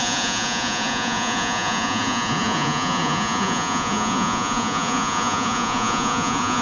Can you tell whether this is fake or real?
fake